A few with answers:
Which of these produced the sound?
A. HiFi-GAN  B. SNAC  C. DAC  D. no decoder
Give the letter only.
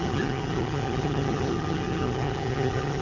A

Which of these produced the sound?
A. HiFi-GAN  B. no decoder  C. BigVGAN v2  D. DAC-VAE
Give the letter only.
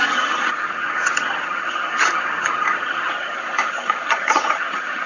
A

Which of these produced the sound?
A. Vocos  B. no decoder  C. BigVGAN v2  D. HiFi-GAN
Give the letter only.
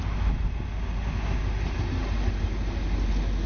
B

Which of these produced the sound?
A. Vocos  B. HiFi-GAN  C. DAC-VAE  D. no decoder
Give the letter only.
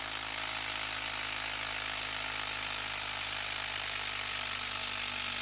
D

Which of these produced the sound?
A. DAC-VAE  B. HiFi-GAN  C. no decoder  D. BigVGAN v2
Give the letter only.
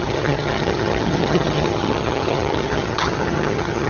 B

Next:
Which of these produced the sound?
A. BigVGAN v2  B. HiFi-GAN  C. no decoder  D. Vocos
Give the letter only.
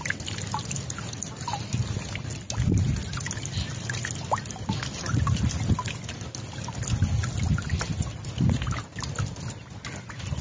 C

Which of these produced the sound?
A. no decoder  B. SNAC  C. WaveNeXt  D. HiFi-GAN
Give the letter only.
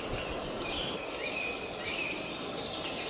A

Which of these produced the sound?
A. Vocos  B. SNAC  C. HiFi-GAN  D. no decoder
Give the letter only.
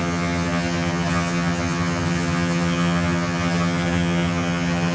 C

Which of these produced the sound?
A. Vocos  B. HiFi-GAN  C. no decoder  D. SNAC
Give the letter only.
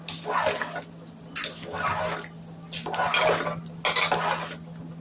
C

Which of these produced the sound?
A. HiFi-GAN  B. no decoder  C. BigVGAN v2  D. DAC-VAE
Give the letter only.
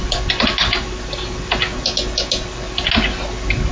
B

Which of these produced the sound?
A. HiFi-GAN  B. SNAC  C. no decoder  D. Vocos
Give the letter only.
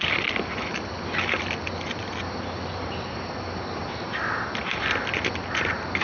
C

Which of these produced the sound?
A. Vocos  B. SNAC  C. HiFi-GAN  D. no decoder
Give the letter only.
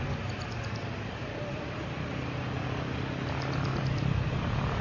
D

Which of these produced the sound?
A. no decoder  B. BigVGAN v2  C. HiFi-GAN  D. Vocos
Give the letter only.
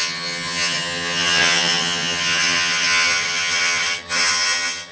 C